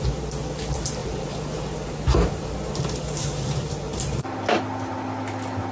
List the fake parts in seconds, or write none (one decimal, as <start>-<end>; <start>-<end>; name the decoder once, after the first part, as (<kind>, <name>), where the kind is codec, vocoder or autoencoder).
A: 1.0-4.4 (vocoder, BigVGAN v2)